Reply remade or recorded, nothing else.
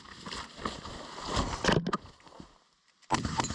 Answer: recorded